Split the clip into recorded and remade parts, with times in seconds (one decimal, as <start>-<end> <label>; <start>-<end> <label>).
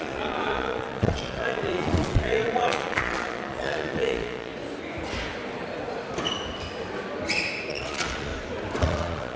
0.0-4.5 remade; 4.5-7.7 recorded; 7.7-8.3 remade; 8.3-8.8 recorded; 8.8-9.4 remade